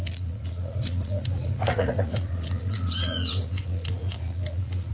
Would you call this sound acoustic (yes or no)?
no